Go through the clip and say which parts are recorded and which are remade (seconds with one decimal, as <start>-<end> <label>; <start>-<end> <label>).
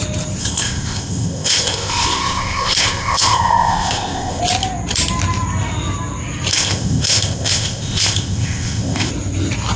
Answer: 0.0-0.4 recorded; 0.4-4.4 remade; 4.4-6.5 recorded; 6.5-9.1 remade; 9.1-9.8 recorded